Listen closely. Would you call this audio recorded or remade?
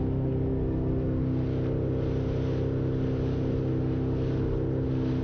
recorded